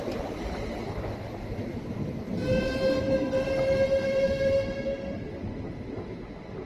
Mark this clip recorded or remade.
recorded